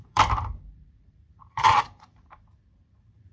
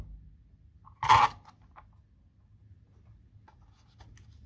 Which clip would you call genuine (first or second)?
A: second